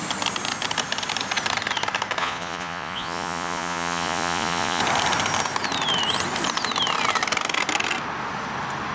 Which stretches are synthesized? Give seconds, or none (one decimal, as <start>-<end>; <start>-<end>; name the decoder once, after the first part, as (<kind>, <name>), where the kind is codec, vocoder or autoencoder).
2.2-4.8 (vocoder, Vocos)